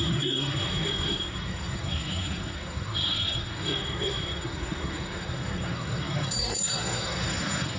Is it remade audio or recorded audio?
remade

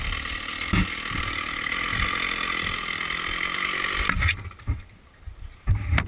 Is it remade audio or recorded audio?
recorded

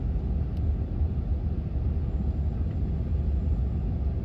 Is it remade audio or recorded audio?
recorded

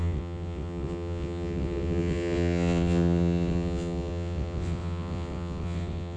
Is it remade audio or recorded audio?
remade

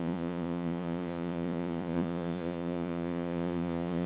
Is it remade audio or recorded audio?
remade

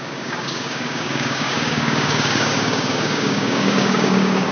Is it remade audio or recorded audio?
remade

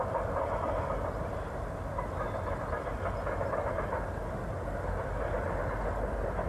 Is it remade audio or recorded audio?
recorded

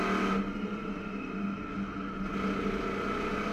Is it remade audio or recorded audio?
recorded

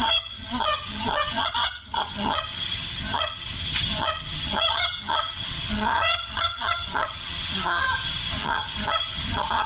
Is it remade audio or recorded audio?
remade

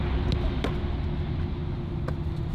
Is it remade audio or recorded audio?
recorded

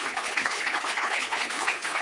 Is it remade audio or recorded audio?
remade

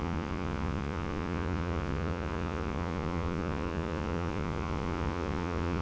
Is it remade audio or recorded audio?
remade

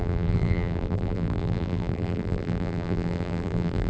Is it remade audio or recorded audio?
remade